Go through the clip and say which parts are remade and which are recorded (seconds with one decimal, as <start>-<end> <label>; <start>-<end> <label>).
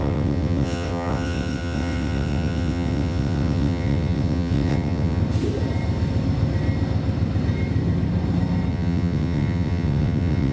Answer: 0.0-5.2 remade; 5.2-8.7 recorded; 8.7-10.5 remade